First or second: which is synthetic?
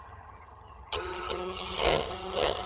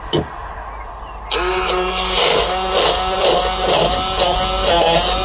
first